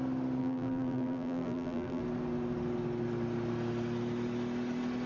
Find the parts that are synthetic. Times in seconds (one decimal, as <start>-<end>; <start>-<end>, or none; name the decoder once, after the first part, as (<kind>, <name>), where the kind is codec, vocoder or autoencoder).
0.4-2.0 (vocoder, BigVGAN v2)